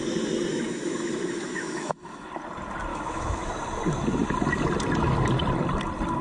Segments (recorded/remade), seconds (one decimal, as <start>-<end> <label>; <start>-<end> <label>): 0.0-0.5 recorded; 0.5-2.3 remade; 2.3-2.9 recorded; 2.9-3.5 remade; 3.5-6.2 recorded